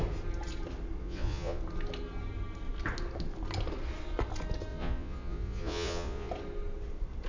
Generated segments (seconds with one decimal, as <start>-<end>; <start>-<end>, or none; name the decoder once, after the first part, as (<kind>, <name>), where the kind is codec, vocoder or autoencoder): 1.0-1.6 (vocoder, Vocos); 4.7-6.3